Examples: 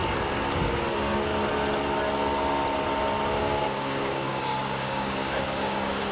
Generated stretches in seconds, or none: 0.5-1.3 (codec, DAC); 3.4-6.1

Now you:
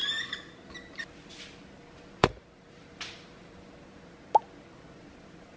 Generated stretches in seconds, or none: 2.2-3.7 (vocoder, BigVGAN v2)